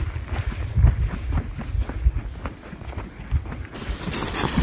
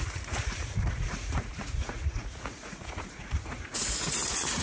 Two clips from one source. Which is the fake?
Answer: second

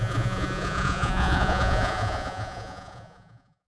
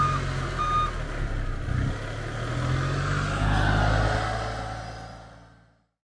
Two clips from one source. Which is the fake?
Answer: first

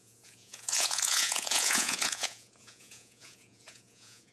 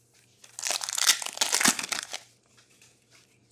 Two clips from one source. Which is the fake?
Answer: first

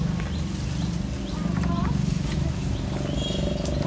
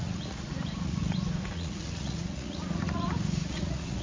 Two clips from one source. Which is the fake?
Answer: second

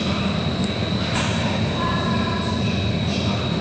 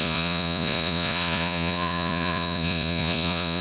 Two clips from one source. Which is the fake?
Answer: second